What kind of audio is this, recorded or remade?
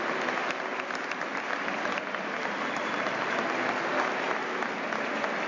recorded